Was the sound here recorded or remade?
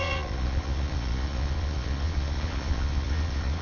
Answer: remade